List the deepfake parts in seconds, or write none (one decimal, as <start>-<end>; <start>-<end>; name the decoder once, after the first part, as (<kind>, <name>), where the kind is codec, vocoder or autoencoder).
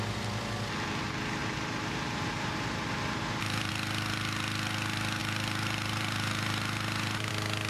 1.4-3.7 (vocoder, BigVGAN v2); 5.2-7.3